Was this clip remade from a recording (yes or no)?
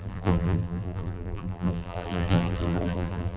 yes